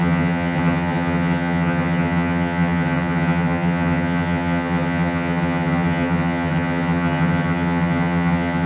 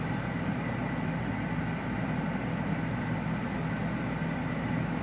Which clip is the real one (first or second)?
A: second